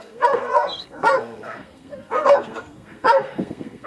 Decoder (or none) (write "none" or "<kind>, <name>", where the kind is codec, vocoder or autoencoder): codec, SNAC